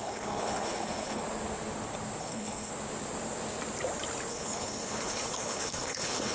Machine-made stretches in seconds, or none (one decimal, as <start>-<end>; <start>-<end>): 0.0-1.2; 2.2-2.7; 4.3-6.3